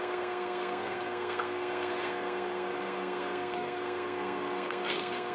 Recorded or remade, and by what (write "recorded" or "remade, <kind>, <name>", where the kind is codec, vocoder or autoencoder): remade, codec, SNAC